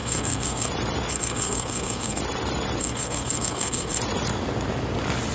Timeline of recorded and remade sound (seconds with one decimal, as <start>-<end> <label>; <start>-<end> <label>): 0.0-0.7 remade; 0.7-1.1 recorded; 1.1-2.2 remade; 2.2-2.8 recorded; 2.8-4.0 remade; 4.0-5.3 recorded